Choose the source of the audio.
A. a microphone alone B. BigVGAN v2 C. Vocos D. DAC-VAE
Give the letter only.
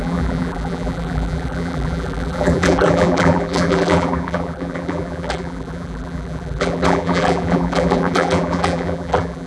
B